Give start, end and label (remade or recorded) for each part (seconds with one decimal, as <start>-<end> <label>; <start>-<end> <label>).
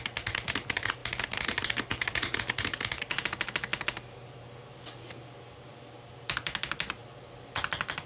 0.0-8.1 recorded